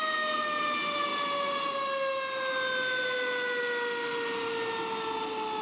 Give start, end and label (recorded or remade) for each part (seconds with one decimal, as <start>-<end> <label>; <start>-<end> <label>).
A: 0.0-5.6 recorded